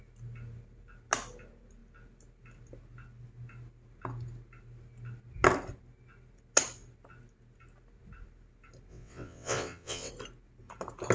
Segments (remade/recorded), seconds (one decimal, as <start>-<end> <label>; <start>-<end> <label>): 0.0-8.9 recorded; 8.9-10.1 remade; 10.1-11.1 recorded